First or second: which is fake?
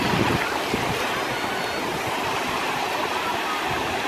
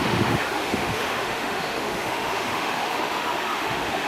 second